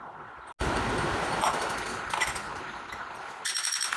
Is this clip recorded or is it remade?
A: recorded